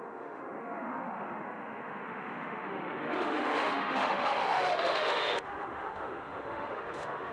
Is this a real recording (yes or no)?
no